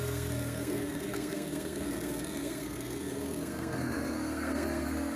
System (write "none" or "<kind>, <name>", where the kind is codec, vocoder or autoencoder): codec, SNAC